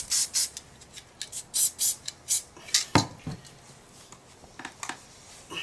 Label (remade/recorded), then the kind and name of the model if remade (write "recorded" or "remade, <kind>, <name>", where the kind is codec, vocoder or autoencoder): recorded